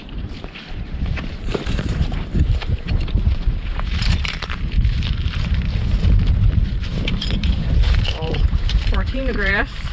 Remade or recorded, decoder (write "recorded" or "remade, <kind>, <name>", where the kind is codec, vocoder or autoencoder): remade, vocoder, BigVGAN v2